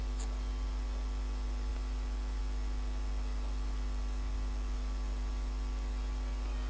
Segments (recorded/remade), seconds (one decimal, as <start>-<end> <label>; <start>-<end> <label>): 0.0-6.7 recorded